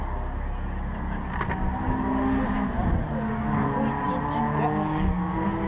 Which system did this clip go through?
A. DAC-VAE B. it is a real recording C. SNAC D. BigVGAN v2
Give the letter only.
B